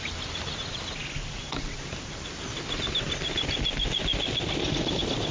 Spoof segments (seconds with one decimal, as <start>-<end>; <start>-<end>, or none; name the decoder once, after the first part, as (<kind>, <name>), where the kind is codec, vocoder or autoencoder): none